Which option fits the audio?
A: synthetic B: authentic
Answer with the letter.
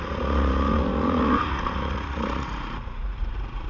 A